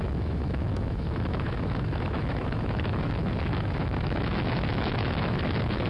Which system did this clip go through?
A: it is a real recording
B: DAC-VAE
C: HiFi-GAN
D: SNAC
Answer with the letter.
B